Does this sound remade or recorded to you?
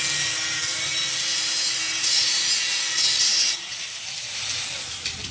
remade